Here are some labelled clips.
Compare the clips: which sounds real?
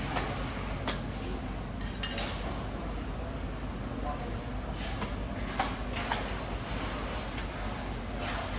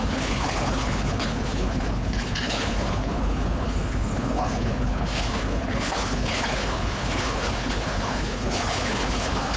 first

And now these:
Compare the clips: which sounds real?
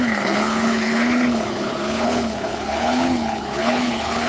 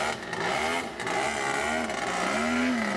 second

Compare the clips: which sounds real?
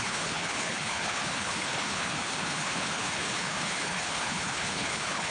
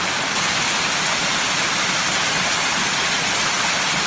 second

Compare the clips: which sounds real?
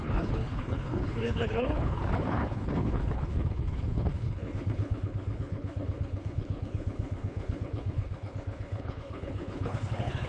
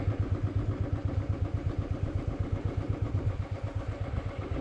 second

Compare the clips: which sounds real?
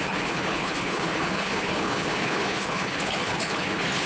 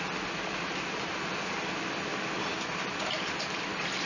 second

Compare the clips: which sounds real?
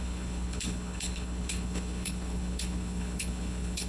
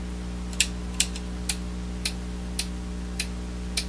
second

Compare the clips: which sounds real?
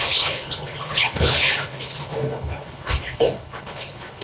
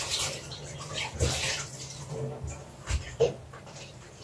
second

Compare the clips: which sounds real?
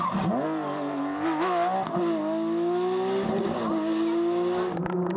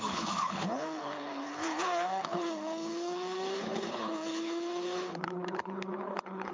first